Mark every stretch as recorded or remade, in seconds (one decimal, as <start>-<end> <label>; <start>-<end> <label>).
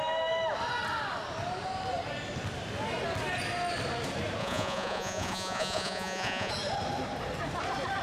0.0-4.4 recorded; 4.4-6.5 remade; 6.5-8.0 recorded